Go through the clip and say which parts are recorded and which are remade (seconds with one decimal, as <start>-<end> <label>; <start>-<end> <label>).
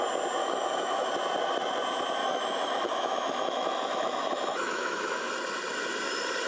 0.0-0.4 recorded; 0.4-1.1 remade; 1.1-2.2 recorded; 2.2-5.3 remade; 5.3-6.5 recorded